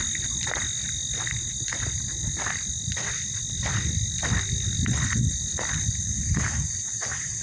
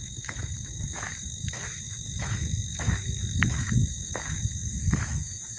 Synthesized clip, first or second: second